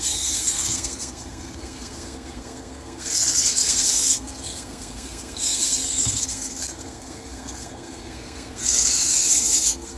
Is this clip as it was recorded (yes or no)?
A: no